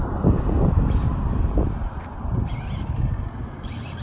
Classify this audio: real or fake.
real